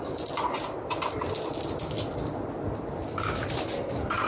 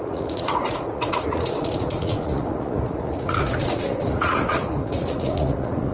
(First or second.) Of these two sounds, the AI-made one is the second